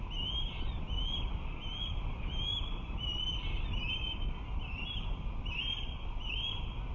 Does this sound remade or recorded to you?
recorded